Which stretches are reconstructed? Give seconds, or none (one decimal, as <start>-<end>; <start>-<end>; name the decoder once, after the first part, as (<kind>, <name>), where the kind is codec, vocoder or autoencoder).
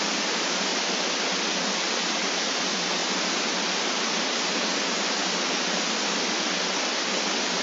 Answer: 0.0-0.7 (vocoder, BigVGAN v2); 2.5-3.0